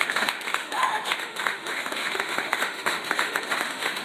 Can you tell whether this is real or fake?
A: fake